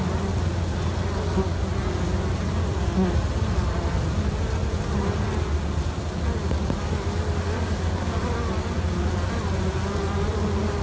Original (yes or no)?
yes